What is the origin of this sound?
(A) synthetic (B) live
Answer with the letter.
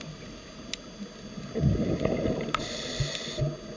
B